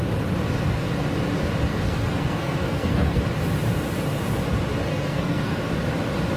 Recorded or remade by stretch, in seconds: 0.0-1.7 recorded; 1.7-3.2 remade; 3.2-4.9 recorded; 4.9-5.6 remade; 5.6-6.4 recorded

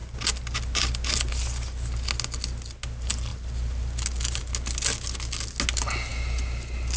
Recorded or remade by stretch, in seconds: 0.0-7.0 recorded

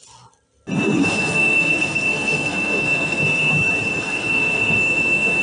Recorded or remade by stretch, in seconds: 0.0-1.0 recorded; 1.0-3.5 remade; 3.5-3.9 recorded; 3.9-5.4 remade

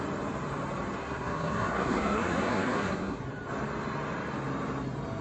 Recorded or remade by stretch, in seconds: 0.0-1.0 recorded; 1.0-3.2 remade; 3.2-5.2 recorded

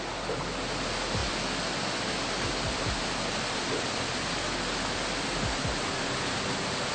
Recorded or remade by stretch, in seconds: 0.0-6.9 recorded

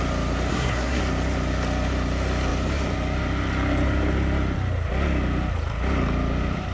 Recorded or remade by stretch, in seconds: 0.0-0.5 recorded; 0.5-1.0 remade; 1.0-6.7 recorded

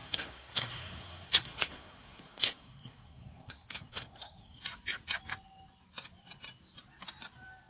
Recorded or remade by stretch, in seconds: 0.0-4.6 remade; 4.6-7.7 recorded

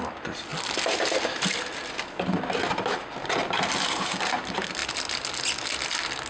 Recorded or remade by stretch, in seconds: 0.0-6.3 recorded